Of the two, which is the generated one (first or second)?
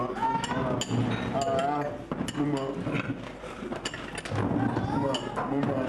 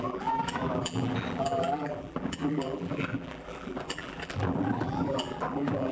second